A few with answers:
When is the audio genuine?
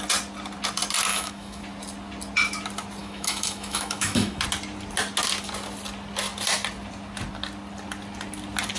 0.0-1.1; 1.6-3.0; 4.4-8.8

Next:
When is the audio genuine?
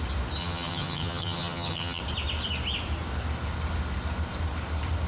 0.0-0.4; 2.0-5.1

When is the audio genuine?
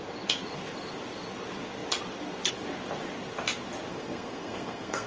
0.0-3.9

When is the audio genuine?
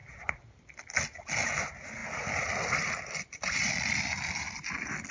0.6-2.0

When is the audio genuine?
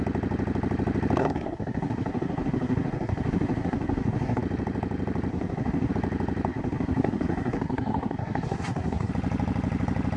0.0-1.2; 4.4-5.3; 5.9-6.5; 9.1-10.2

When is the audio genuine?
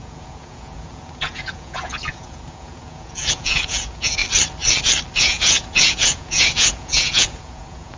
4.2-5.2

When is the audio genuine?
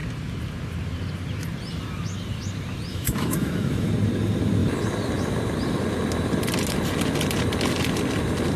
0.0-2.9; 3.9-8.6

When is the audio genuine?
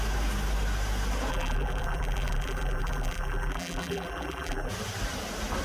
0.0-1.3; 4.7-5.6